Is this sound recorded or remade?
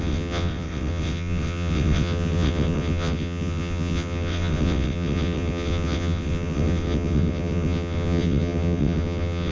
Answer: remade